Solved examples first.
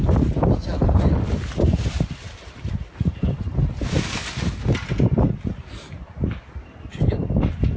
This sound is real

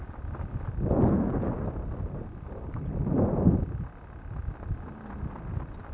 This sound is real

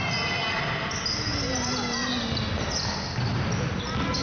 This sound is real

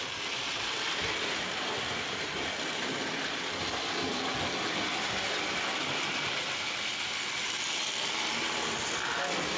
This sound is real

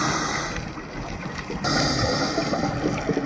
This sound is real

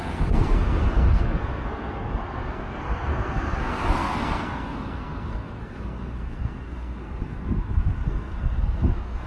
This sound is fake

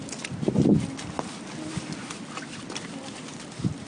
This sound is real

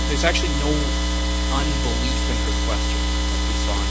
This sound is real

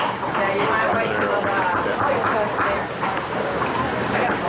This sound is real